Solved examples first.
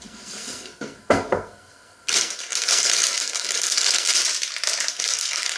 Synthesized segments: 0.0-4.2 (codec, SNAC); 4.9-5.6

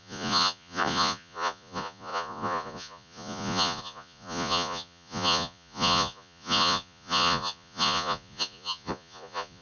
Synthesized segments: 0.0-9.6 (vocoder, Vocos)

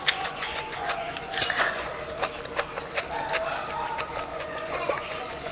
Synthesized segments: 0.0-1.9 (vocoder, Vocos); 4.3-5.5

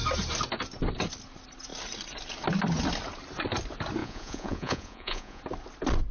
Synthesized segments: 4.0-5.4 (vocoder, Vocos)

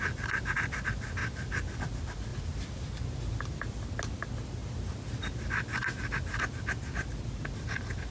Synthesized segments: 2.3-3.0 (vocoder, BigVGAN v2); 7.1-8.1

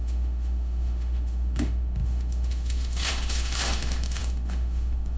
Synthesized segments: 0.0-5.2 (autoencoder, DAC-VAE)

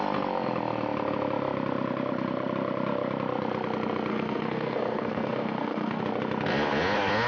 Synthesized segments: 4.1-6.0 (codec, SNAC)

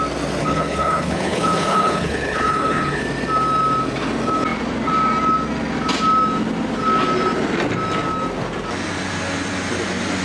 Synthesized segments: 0.4-3.0 (codec, HILCodec)